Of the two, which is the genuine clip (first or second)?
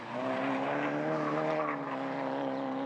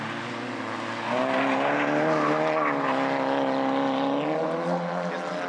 second